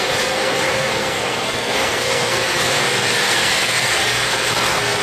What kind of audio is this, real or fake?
fake